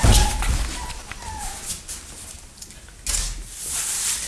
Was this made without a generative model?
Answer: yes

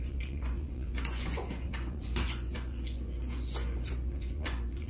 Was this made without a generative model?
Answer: no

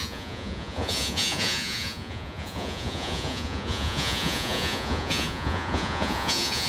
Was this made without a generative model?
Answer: no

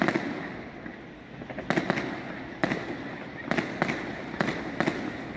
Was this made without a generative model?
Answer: yes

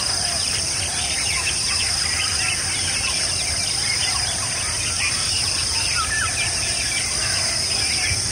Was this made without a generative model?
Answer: no